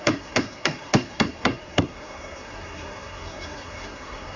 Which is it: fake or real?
fake